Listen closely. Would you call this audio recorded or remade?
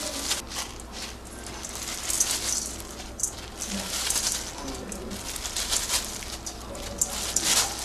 recorded